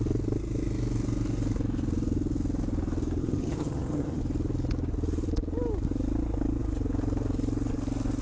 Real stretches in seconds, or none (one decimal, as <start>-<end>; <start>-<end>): 0.0-3.2; 4.2-8.2